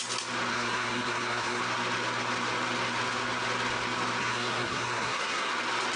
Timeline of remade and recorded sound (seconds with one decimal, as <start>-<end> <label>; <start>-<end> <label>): 0.0-0.5 recorded; 0.5-1.6 remade; 1.6-4.2 recorded; 4.2-5.5 remade; 5.5-6.0 recorded